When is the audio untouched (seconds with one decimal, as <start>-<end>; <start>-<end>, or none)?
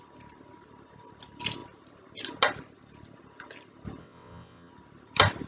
0.0-4.0; 4.7-5.5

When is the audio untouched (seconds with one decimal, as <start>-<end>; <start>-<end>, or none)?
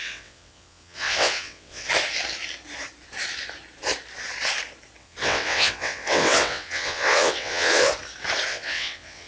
1.9-5.0; 7.9-8.5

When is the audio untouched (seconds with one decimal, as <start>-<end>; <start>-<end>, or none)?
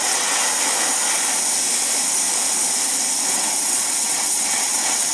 0.4-3.3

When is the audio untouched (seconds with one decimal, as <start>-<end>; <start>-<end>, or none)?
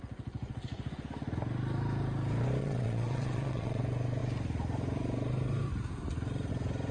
0.0-2.6; 3.8-6.9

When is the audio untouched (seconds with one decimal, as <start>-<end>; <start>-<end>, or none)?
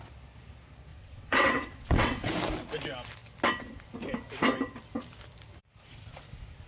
0.0-0.9; 2.3-6.7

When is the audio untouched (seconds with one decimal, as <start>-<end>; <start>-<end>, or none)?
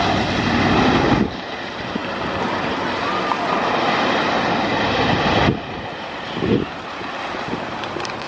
0.0-8.3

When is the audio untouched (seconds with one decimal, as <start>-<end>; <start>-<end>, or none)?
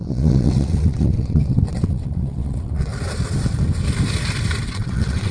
2.9-4.6